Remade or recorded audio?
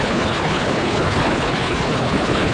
remade